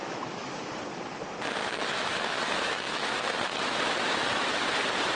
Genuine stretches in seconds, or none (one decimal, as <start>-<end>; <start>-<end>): 0.6-1.6; 4.7-5.2